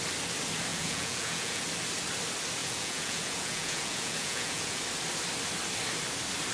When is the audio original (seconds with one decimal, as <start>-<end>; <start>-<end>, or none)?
0.0-0.7; 1.6-2.6; 4.8-6.5